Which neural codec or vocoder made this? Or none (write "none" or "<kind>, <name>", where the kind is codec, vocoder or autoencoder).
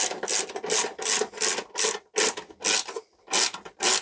none